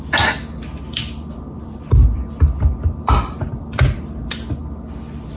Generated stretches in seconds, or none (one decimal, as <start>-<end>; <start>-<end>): 0.8-4.0